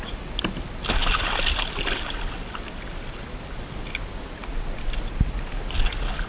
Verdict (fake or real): real